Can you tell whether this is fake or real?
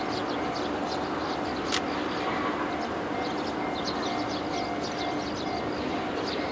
real